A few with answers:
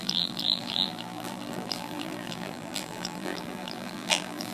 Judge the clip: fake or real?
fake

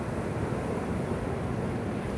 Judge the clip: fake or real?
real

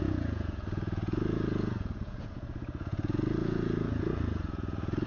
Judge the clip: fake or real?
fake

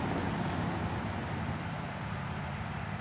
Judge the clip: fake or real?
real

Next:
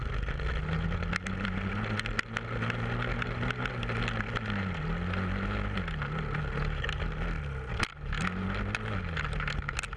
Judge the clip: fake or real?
real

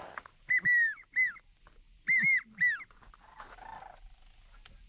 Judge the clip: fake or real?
real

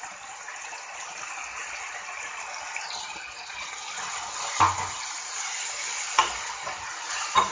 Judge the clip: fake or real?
real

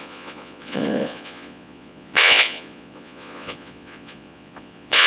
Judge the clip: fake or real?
fake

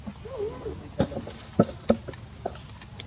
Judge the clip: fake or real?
real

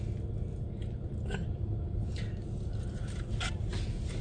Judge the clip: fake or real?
real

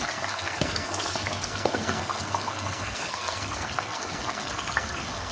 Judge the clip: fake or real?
fake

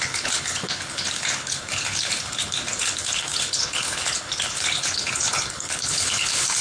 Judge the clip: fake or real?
fake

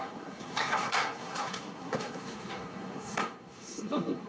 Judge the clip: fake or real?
fake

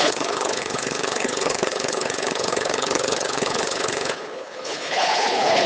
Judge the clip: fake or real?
fake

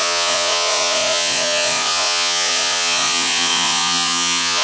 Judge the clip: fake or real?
fake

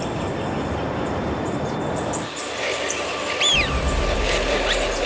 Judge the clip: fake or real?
fake